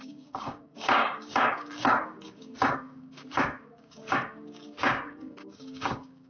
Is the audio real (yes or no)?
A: no